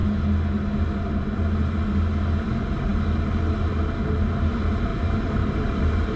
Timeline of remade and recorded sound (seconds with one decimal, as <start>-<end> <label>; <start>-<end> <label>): 0.0-4.9 recorded; 4.9-6.2 remade